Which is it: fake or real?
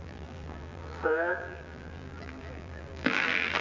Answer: fake